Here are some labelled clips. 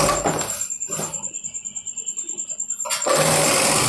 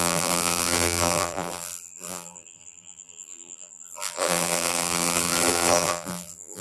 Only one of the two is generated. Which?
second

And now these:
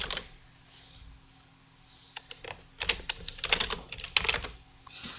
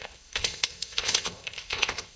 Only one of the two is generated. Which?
second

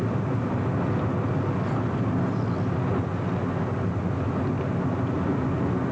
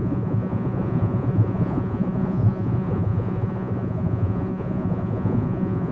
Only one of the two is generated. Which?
second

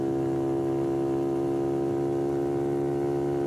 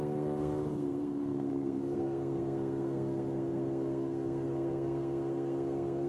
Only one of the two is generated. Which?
second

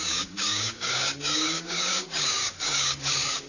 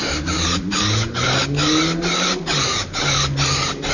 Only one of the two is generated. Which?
first